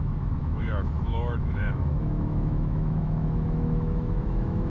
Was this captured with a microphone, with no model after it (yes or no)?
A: no